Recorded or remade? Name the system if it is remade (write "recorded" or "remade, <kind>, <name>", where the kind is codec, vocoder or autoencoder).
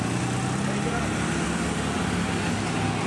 recorded